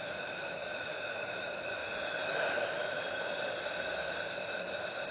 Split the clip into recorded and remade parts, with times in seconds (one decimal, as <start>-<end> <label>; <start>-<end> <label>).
0.0-1.8 remade; 1.8-5.1 recorded